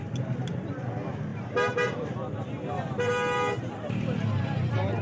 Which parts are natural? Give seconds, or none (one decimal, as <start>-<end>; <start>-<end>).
0.0-1.3; 2.4-5.0

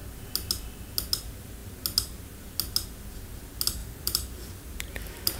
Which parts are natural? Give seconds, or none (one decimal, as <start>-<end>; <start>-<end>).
0.0-3.8; 4.9-5.4

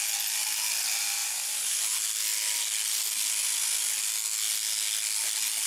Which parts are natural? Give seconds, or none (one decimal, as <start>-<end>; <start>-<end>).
0.0-1.2; 1.8-5.7

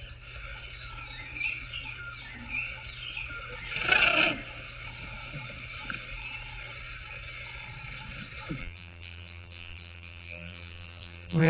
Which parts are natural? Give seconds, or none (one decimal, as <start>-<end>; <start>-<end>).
0.0-8.6